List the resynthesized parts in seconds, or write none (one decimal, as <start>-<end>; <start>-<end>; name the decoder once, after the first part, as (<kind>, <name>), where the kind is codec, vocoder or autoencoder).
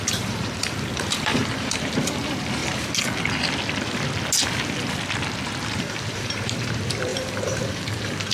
0.0-2.6 (vocoder, BigVGAN v2); 5.4-8.3